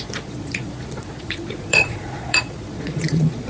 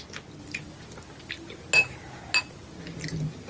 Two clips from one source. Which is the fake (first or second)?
first